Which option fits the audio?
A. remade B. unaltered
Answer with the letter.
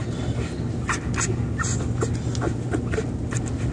B